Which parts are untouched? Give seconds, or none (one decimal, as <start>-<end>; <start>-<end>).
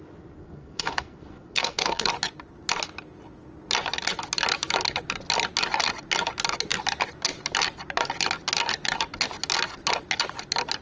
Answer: 0.0-0.4; 2.1-10.8